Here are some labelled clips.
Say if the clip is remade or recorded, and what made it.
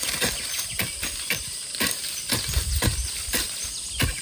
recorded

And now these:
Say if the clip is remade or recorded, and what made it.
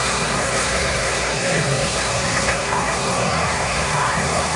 remade, codec, SNAC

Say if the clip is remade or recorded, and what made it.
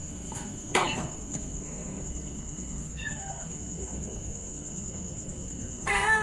remade, codec, SNAC